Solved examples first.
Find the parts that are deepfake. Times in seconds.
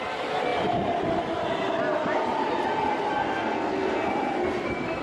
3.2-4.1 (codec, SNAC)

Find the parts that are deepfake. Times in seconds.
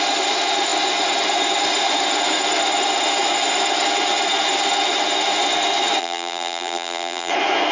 6.0-7.3 (vocoder, BigVGAN v2)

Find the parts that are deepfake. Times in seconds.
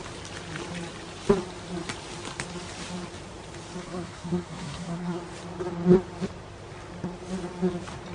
3.8-5.2 (codec, SNAC)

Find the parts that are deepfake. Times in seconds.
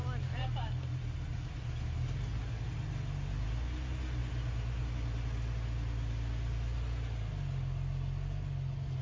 none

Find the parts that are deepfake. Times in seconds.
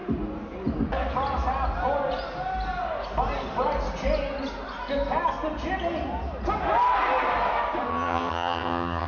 7.9-9.1 (vocoder, HiFi-GAN)